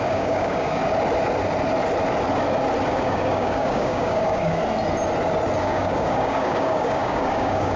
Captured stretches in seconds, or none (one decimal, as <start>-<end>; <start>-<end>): 0.8-2.9; 4.6-5.6

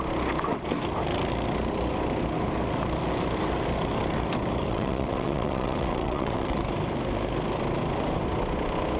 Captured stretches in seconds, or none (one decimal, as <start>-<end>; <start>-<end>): 0.0-4.7; 6.6-9.0